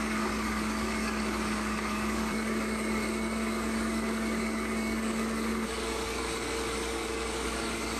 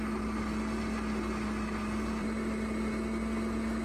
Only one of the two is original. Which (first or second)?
second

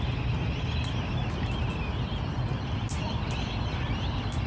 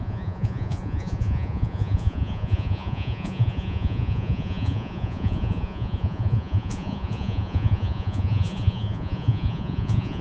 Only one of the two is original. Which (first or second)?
first